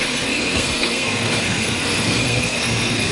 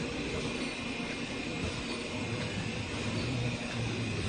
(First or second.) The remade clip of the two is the first